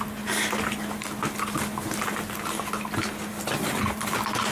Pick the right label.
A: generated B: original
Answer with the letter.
B